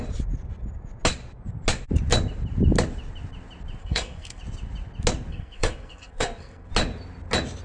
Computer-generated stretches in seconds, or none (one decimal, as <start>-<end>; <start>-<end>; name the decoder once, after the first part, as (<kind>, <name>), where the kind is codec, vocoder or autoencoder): 3.8-4.4 (codec, SNAC); 5.3-6.7